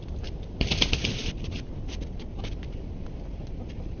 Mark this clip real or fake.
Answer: real